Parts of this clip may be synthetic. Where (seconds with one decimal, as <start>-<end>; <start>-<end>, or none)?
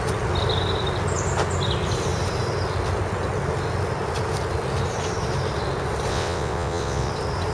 6.1-7.1